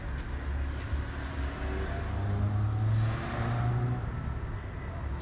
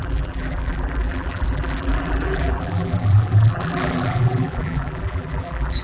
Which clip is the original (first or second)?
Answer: first